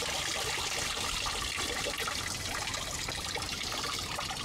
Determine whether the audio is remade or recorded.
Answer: recorded